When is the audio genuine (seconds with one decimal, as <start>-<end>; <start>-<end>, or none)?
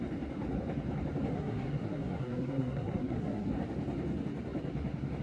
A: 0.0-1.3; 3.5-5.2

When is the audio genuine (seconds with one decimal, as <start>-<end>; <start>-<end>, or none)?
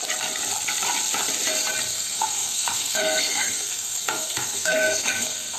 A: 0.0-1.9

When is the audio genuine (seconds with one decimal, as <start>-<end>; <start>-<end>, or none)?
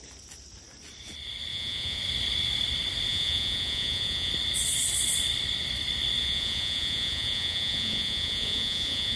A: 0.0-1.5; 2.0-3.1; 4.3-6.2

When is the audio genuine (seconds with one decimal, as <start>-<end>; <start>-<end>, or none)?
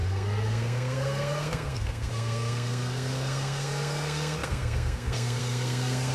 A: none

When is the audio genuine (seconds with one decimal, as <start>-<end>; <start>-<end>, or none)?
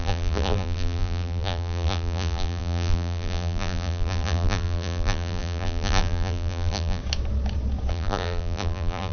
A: 7.0-7.9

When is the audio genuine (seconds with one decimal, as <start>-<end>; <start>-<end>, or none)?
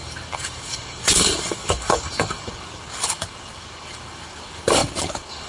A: none